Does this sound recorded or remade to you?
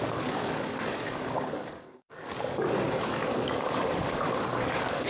remade